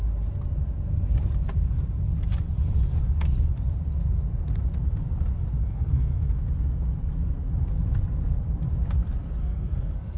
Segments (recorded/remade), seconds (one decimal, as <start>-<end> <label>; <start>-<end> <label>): 0.0-5.6 recorded; 5.6-6.4 remade; 6.4-9.4 recorded; 9.4-10.2 remade